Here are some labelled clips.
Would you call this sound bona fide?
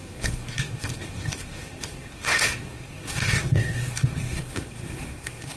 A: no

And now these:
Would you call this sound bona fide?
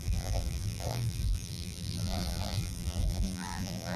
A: no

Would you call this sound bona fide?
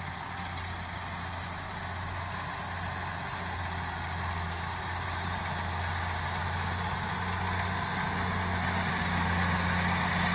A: yes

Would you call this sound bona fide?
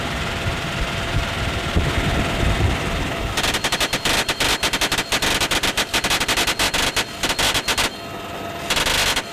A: yes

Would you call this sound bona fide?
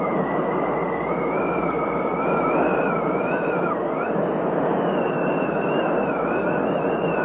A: yes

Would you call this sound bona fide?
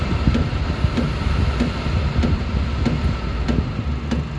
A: yes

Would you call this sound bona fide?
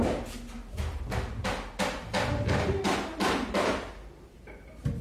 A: yes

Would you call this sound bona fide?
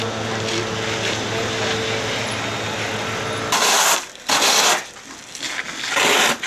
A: yes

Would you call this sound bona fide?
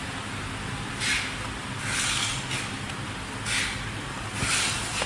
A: yes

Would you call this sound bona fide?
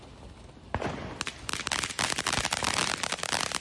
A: yes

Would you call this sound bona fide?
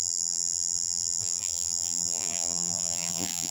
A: no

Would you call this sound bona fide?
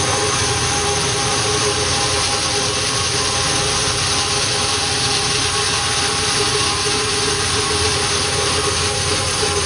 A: yes